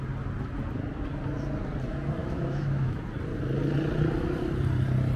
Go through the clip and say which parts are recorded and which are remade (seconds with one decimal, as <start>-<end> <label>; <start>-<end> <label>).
0.0-2.2 recorded; 2.2-3.0 remade; 3.0-5.2 recorded